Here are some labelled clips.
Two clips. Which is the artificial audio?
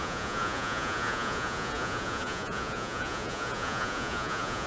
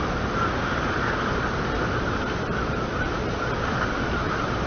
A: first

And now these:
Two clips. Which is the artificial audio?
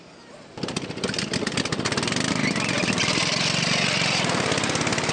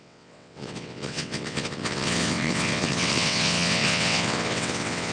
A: second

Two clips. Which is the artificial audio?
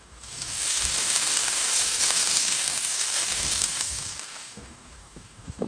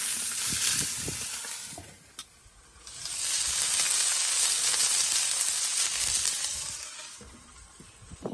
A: first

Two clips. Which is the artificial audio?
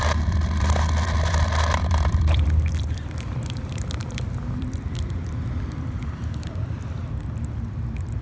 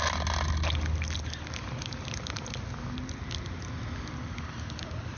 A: first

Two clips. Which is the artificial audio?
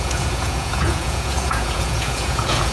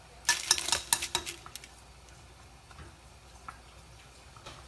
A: first